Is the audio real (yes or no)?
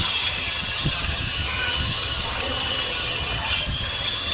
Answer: no